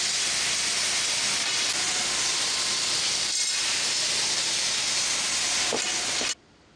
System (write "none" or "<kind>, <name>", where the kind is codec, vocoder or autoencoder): none